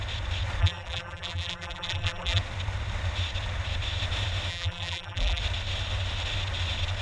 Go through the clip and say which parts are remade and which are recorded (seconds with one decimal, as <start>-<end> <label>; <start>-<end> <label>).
0.0-0.6 recorded; 0.6-2.4 remade; 2.4-4.5 recorded; 4.5-5.4 remade; 5.4-7.0 recorded